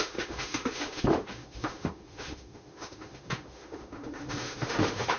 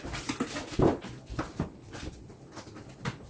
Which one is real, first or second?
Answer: second